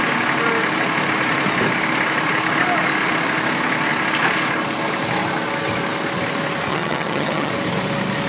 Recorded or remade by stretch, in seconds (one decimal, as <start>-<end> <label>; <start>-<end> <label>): 0.0-6.7 recorded; 6.7-7.5 remade; 7.5-8.3 recorded